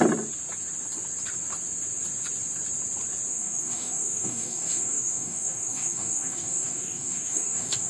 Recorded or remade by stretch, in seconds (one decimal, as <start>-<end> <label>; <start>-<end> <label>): 0.0-3.3 recorded; 3.3-7.9 remade